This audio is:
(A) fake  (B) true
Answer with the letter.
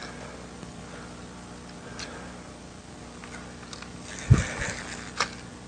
B